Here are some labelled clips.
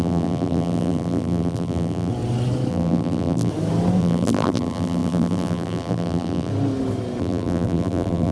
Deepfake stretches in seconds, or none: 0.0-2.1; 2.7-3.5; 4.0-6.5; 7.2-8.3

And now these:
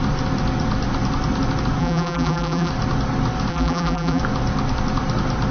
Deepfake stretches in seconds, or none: 1.8-2.7; 3.5-4.2

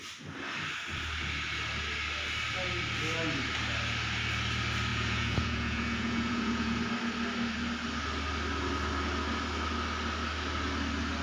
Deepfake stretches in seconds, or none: 4.9-6.8

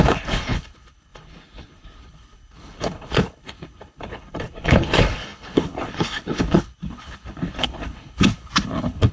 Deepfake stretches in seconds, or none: 0.0-9.1